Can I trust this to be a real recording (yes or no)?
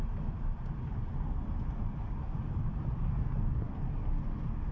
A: yes